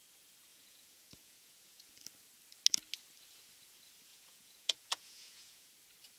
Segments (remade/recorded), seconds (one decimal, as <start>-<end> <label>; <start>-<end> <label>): 0.0-0.5 recorded; 0.5-1.9 remade; 1.9-4.1 recorded; 4.1-5.7 remade; 5.7-6.2 recorded